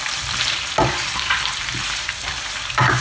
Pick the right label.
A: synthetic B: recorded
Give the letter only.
A